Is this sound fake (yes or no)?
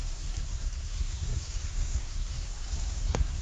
yes